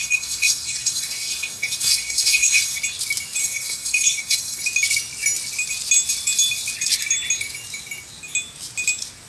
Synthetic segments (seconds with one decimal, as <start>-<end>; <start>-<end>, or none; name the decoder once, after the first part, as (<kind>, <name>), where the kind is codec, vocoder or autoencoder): 0.0-2.8 (codec, SNAC); 3.4-4.6